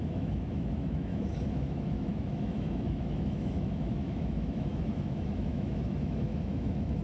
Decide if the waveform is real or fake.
fake